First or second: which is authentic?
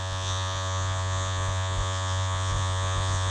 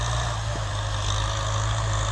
second